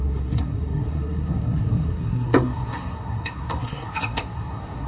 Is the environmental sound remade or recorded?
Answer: remade